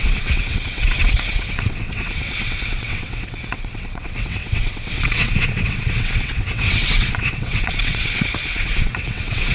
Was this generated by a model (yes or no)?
yes